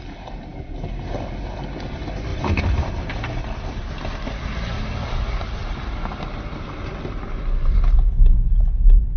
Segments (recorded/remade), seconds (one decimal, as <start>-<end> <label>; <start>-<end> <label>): 0.0-2.3 recorded; 2.3-2.9 remade; 2.9-9.2 recorded